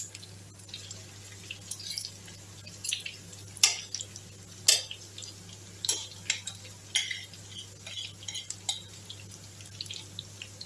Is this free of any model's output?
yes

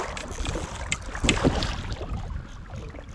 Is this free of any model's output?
yes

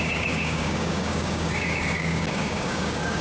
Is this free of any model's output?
no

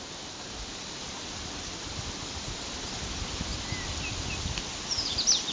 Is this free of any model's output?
yes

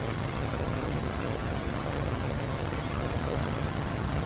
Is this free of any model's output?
no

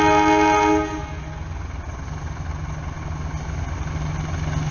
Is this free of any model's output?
yes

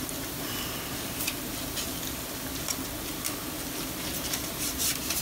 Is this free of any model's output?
yes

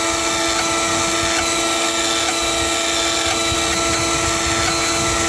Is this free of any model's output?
yes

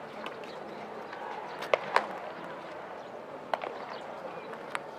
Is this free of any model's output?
yes